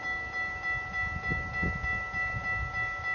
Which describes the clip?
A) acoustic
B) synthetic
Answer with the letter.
A